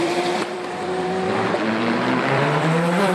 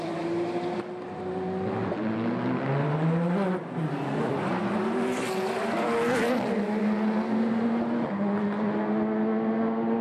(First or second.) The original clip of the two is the second